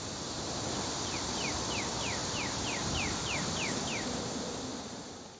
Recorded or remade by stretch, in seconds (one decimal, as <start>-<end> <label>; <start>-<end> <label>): 0.0-5.4 recorded